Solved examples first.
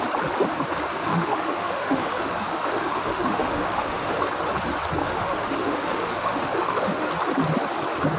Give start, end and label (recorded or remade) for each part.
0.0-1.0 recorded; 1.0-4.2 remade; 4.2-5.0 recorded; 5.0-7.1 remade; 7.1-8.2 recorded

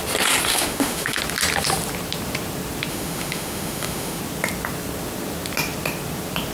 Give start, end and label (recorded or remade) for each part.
0.0-0.5 recorded; 0.5-1.2 remade; 1.2-2.9 recorded; 2.9-4.2 remade; 4.2-6.5 recorded

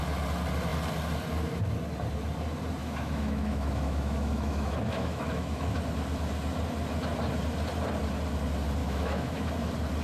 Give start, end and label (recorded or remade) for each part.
0.0-2.8 recorded; 2.8-5.8 remade; 5.8-8.8 recorded; 8.8-9.5 remade; 9.5-10.0 recorded

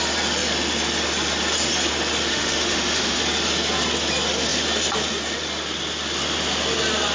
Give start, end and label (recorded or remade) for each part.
0.0-2.3 recorded; 2.3-3.2 remade; 3.2-7.1 recorded

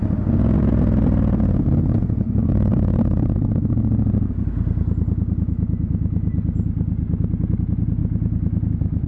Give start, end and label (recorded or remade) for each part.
0.0-9.1 recorded

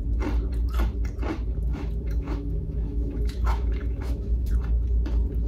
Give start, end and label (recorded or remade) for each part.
0.0-1.7 recorded; 1.7-4.5 remade; 4.5-5.5 recorded

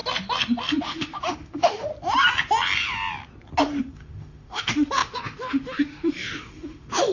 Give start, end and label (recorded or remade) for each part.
0.0-0.8 recorded; 0.8-1.9 remade; 1.9-3.8 recorded; 3.8-7.1 remade

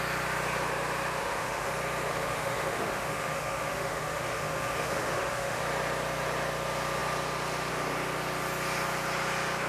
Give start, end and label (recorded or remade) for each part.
0.0-1.2 recorded; 1.2-1.7 remade; 1.7-2.1 recorded; 2.1-5.6 remade; 5.6-9.7 recorded